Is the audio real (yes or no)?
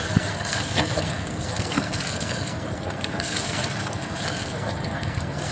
no